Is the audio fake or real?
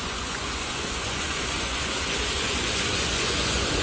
fake